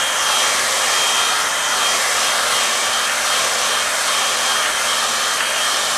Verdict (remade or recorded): recorded